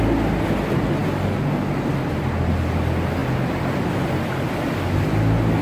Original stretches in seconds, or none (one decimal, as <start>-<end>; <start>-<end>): 0.0-5.6